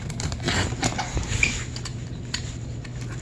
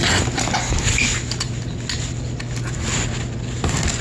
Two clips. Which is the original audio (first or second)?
second